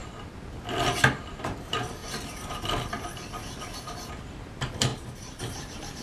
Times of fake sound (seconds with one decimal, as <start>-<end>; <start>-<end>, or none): 1.3-2.0; 4.2-6.0